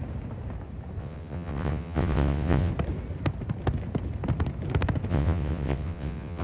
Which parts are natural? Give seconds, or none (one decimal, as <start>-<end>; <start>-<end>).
0.0-1.0; 2.7-5.1